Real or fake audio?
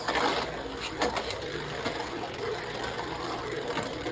real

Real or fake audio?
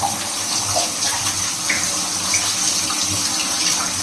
real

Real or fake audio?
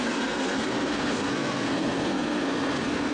fake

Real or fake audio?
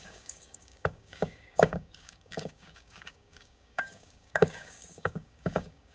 fake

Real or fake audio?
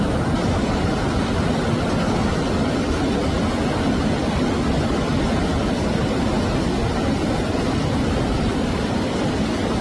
real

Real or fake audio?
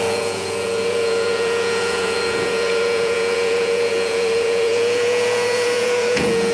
fake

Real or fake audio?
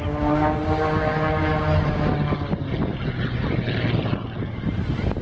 real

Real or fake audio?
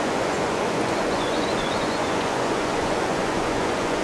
fake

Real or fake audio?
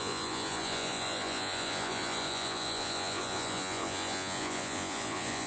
fake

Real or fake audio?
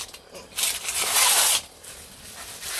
real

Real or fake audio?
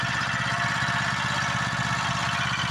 real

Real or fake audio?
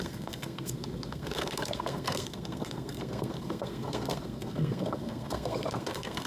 fake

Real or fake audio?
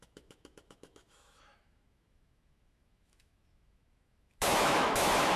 fake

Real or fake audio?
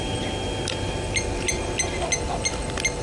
real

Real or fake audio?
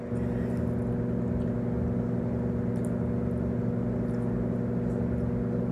real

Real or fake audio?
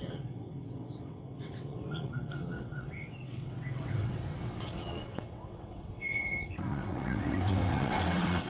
fake